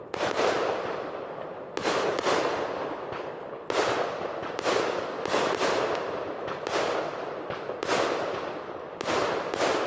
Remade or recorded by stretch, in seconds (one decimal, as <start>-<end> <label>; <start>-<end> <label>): 0.0-1.8 recorded; 1.8-2.3 remade; 2.3-9.9 recorded